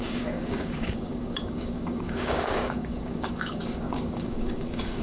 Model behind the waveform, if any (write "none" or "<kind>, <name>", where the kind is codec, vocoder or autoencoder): codec, DAC